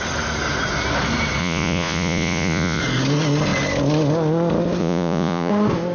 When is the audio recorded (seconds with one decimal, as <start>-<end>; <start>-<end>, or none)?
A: 0.0-1.4; 2.8-4.8; 5.5-5.9